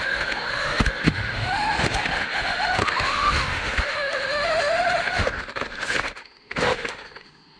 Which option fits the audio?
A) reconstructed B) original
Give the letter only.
A